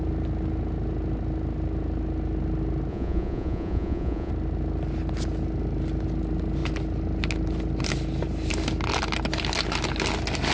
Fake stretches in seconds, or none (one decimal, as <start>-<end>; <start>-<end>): 2.9-4.3